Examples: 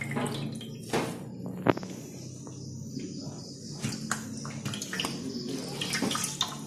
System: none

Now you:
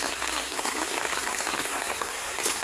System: codec, SNAC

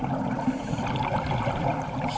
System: none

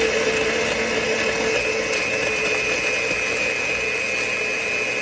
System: none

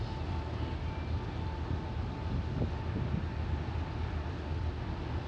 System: none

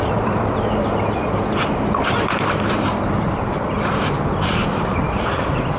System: vocoder, BigVGAN v2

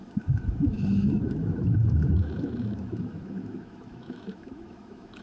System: autoencoder, DAC-VAE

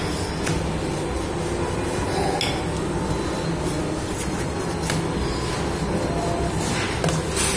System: none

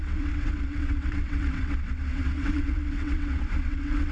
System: vocoder, WaveNeXt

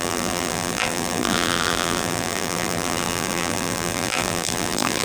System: vocoder, BigVGAN v2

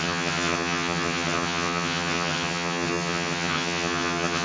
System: vocoder, HiFi-GAN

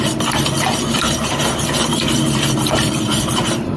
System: vocoder, BigVGAN v2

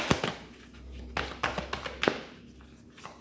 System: none